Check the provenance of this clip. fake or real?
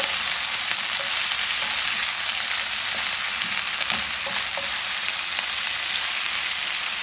real